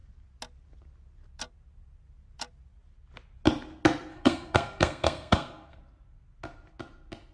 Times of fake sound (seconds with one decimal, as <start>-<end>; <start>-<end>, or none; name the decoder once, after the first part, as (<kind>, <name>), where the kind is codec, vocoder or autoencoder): 4.1-5.8 (codec, SNAC)